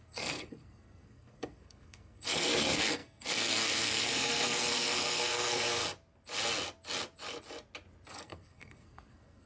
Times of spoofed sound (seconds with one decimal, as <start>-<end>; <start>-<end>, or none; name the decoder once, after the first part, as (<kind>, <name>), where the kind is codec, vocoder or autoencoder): 0.0-5.8 (codec, SNAC); 8.1-9.5